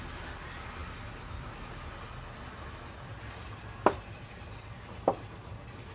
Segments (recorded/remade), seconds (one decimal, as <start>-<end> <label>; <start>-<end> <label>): 0.0-5.9 recorded